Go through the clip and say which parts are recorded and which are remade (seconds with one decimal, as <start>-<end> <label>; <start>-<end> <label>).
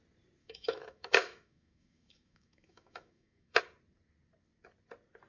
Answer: 0.0-0.4 recorded; 0.4-3.6 remade; 3.6-5.3 recorded